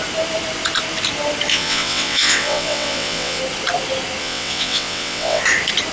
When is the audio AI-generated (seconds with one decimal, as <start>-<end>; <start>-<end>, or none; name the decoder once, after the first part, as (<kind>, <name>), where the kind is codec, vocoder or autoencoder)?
1.5-3.4 (vocoder, WaveNeXt); 4.2-5.4